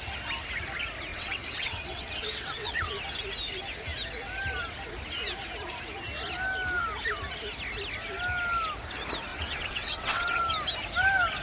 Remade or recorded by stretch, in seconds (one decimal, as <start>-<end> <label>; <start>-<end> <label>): 0.0-1.1 recorded; 1.1-2.9 remade; 2.9-9.3 recorded; 9.3-10.4 remade; 10.4-11.4 recorded